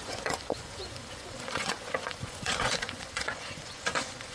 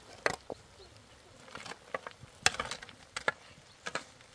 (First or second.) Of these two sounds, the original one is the second